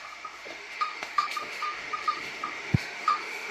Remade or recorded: remade